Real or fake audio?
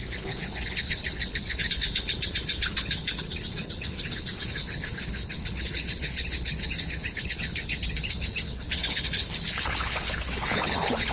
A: fake